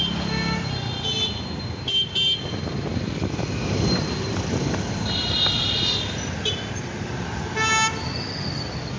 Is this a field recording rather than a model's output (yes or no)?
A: yes